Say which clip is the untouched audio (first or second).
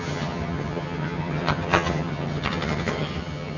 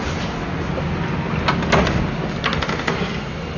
second